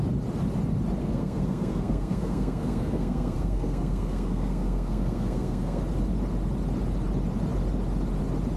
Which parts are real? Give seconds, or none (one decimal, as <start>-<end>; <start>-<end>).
0.0-1.0; 5.8-8.6